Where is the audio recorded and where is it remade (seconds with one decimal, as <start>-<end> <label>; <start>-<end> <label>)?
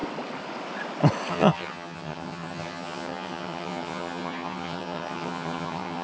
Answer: 0.0-1.3 recorded; 1.3-6.0 remade